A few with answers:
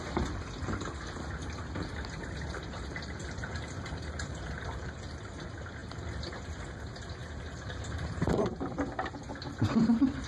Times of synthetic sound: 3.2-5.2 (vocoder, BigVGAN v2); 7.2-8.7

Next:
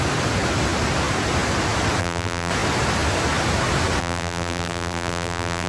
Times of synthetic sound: 2.0-2.5 (vocoder, BigVGAN v2); 4.0-5.7

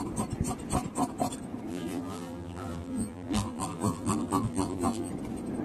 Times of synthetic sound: 1.7-5.1 (vocoder, BigVGAN v2)